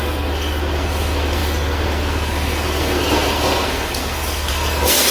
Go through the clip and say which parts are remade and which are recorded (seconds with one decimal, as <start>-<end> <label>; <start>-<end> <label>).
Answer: 0.0-5.1 remade